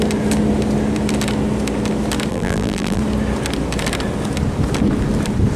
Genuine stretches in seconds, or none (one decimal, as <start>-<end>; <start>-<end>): 0.0-2.3; 3.0-5.6

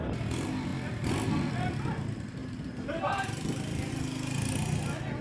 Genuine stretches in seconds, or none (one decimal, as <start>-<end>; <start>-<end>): 0.0-2.4; 3.9-5.2

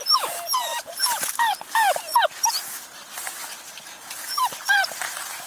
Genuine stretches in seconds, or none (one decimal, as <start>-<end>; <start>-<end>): 2.1-3.7

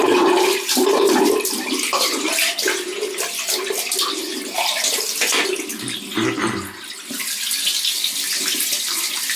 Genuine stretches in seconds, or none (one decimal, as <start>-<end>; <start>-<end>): 0.0-4.7; 5.3-7.7

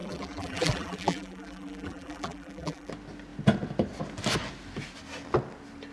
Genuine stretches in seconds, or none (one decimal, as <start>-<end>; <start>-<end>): 2.9-5.9

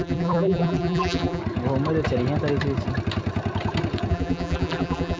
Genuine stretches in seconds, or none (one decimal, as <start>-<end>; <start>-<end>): 1.4-4.1

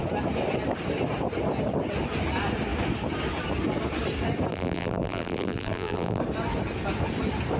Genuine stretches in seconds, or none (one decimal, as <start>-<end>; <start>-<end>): 0.0-4.5; 6.2-7.6